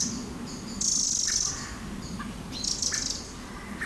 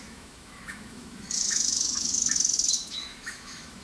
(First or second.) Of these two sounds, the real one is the first